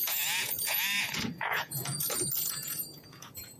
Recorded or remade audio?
remade